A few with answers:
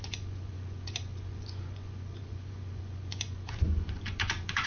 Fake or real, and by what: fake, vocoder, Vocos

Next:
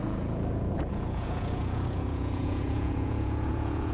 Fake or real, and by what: fake, vocoder, Vocos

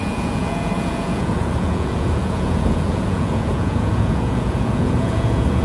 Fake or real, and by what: fake, vocoder, Vocos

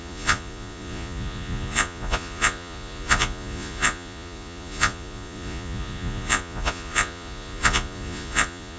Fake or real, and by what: fake, vocoder, Vocos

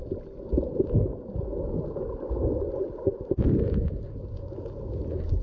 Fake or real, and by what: real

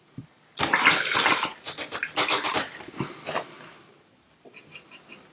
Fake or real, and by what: real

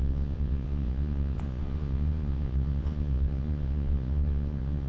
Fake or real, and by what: fake, vocoder, Vocos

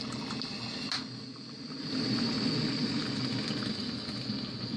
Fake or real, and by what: real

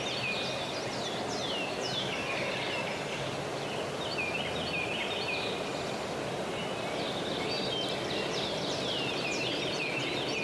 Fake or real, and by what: real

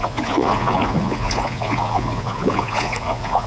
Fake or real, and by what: fake, vocoder, Vocos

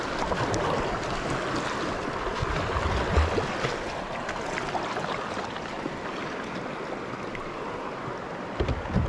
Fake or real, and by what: real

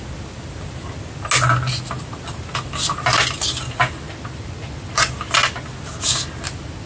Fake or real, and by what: real